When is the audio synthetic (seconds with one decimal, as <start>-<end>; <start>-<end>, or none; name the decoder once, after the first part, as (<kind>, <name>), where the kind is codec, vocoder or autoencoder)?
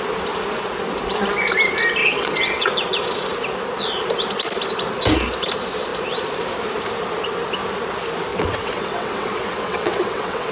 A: 2.0-2.6 (vocoder, WaveNeXt); 8.3-10.5